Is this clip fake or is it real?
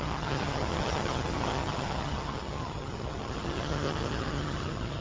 fake